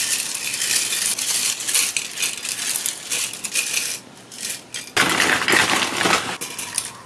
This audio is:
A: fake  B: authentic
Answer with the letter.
B